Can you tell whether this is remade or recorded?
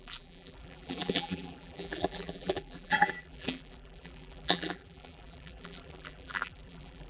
remade